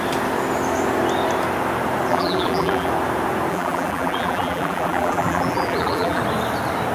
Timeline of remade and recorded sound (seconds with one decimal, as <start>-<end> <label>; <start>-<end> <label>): 0.0-2.1 recorded; 2.1-2.9 remade; 2.9-3.5 recorded; 3.5-6.2 remade; 6.2-6.9 recorded